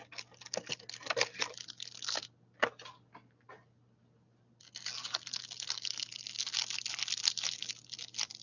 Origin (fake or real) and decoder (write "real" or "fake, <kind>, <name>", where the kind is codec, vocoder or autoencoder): real